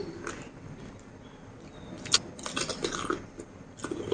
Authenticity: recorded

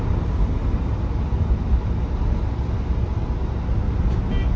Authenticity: recorded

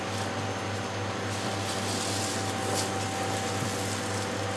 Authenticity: recorded